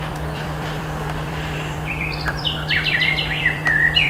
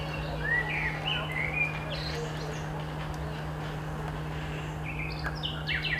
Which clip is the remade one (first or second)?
first